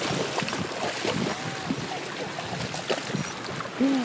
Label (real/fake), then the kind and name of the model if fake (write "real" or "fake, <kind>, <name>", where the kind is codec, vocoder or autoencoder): real